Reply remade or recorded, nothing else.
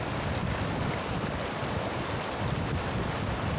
recorded